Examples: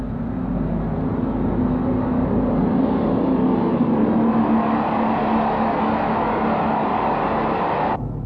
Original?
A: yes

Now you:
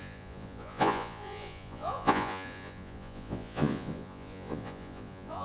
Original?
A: no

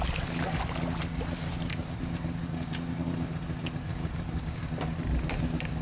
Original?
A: yes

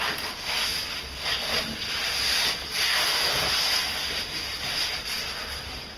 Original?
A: yes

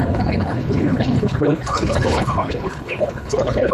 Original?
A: no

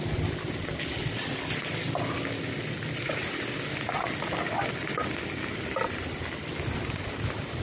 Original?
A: yes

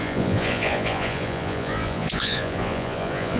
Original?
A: no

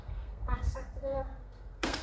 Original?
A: no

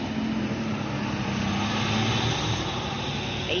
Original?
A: yes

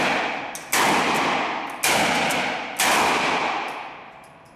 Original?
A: yes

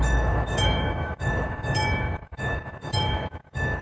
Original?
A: no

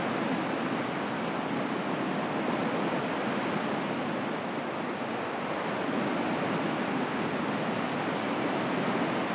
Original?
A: yes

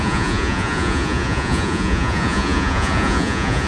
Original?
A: no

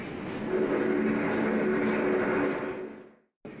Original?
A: yes